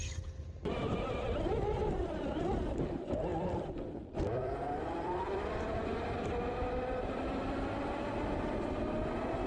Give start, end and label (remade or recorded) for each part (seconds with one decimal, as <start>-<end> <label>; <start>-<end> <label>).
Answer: 0.0-3.3 recorded; 3.3-6.1 remade; 6.1-9.5 recorded